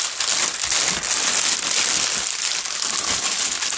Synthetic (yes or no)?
no